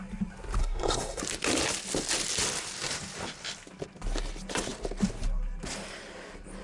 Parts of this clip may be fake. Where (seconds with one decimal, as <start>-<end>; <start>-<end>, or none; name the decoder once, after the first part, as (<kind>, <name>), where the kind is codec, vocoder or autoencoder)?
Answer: 0.6-1.2 (codec, SNAC)